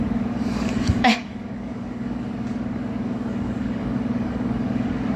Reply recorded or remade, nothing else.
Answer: remade